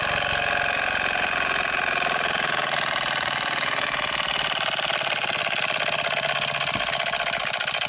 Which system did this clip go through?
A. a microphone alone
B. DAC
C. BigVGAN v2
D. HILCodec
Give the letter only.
A